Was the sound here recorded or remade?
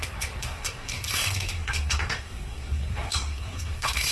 remade